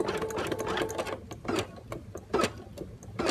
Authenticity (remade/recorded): recorded